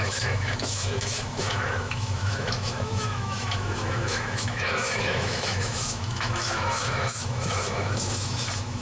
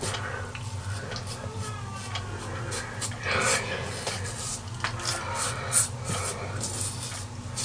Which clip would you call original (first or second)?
second